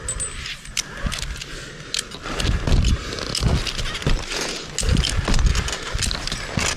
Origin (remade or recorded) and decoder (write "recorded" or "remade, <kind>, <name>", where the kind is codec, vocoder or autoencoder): recorded